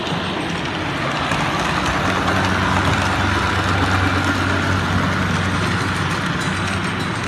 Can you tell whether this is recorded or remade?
recorded